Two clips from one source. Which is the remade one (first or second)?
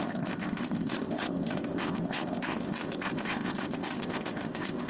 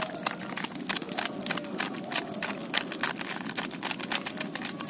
first